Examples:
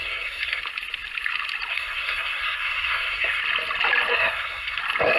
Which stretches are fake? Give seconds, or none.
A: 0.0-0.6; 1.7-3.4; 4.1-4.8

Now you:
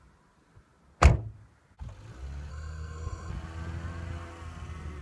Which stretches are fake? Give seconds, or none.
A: 2.5-3.3

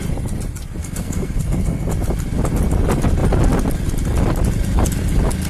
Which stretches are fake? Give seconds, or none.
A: 0.8-1.9

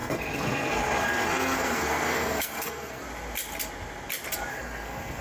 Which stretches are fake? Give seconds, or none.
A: 0.0-3.0; 4.5-5.2